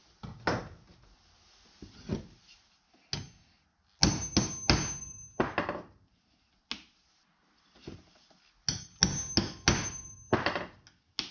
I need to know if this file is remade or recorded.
recorded